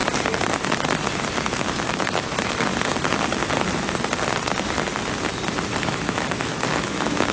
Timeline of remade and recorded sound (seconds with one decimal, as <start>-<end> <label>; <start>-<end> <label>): 0.0-1.4 recorded; 1.4-2.7 remade; 2.7-5.8 recorded; 5.8-7.3 remade